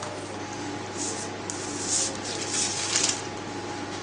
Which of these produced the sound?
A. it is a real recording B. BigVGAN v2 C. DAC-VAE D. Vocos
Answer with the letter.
A